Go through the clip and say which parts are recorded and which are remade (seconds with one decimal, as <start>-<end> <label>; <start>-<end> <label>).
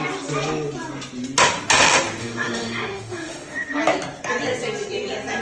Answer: 0.0-2.2 recorded; 2.2-3.8 remade; 3.8-5.4 recorded